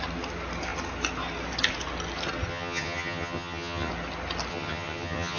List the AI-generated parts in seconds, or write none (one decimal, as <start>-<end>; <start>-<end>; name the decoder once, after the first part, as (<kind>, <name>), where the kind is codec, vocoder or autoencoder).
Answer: 2.5-3.9 (vocoder, HiFi-GAN); 4.5-5.4